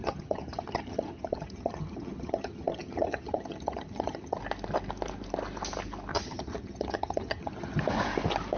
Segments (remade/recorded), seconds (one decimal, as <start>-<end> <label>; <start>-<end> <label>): 0.0-4.4 remade; 4.4-6.1 recorded; 6.1-7.8 remade; 7.8-8.6 recorded